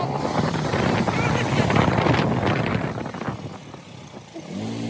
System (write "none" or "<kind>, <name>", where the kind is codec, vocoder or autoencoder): none